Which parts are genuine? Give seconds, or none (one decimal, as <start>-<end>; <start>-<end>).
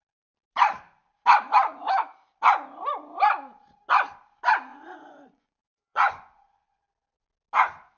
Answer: 0.0-4.7; 6.8-8.0